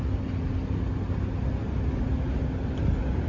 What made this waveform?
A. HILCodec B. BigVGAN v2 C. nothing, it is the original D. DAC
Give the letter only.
C